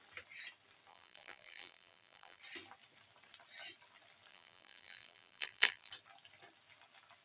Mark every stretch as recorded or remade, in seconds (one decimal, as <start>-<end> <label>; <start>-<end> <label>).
0.0-0.9 recorded; 0.9-2.4 remade; 2.4-4.3 recorded; 4.3-5.9 remade; 5.9-7.2 recorded